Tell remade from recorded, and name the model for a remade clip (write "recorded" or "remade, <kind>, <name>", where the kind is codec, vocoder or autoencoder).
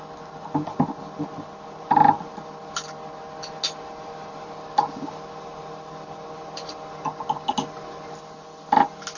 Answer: recorded